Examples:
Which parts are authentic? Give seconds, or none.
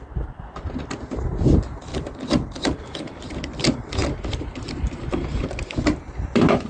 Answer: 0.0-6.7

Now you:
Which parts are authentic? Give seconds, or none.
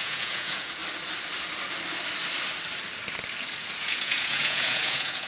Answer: 0.8-3.8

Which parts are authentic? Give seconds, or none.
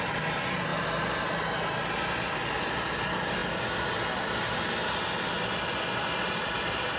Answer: 0.0-7.0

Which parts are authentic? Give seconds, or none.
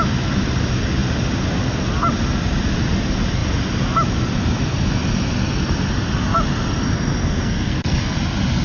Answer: 0.0-7.2; 8.2-8.6